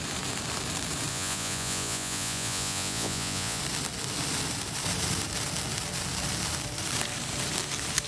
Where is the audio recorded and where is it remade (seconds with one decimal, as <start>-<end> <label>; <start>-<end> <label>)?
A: 0.0-1.1 recorded; 1.1-3.6 remade; 3.6-8.1 recorded